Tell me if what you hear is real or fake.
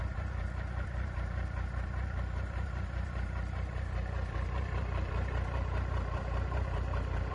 fake